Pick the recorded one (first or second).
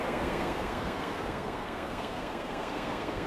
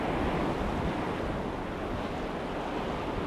second